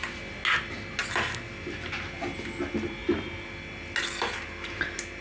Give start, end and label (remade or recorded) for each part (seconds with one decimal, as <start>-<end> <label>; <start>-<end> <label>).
0.0-5.2 recorded